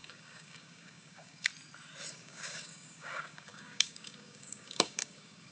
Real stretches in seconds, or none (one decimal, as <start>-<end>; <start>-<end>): 1.5-2.1